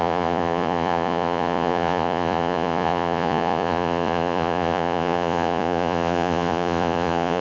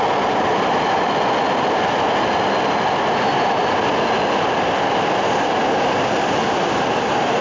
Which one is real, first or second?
second